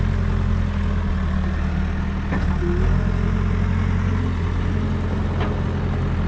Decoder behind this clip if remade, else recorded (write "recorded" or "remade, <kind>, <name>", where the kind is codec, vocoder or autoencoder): recorded